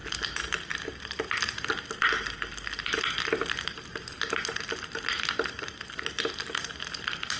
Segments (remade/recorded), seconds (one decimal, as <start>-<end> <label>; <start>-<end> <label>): 0.0-7.4 recorded